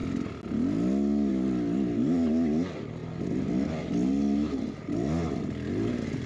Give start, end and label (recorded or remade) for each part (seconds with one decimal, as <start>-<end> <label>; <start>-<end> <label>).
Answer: 0.0-6.3 recorded